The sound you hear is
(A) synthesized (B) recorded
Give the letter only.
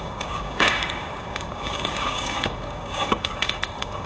A